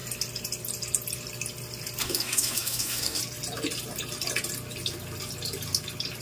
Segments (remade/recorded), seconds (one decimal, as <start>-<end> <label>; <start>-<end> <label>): 0.0-2.0 recorded; 2.0-3.2 remade; 3.2-6.2 recorded